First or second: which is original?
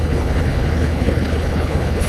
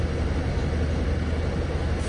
second